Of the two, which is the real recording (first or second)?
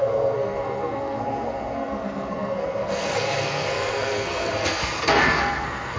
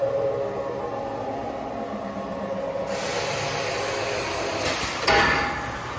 second